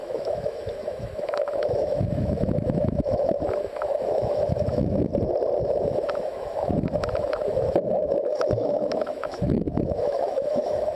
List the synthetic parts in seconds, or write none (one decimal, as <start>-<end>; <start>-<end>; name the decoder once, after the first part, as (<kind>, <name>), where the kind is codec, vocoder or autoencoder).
0.0-5.1 (autoencoder, DAC-VAE); 5.6-11.0